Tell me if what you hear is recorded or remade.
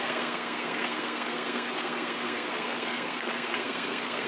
remade